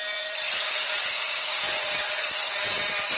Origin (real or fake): real